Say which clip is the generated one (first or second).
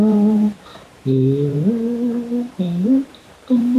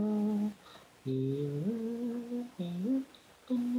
first